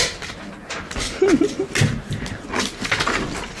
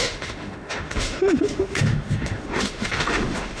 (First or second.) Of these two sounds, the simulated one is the second